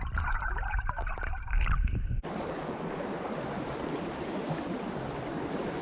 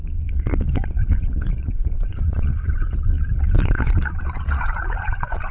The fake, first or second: second